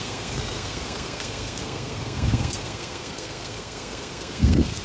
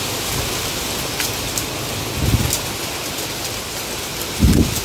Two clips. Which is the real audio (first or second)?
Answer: second